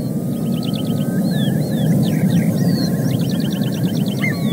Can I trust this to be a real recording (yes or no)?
yes